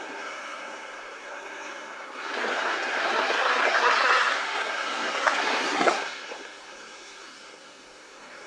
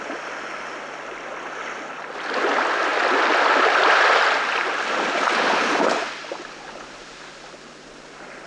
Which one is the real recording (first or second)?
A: second